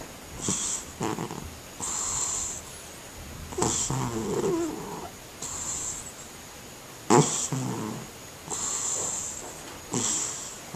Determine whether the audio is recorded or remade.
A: recorded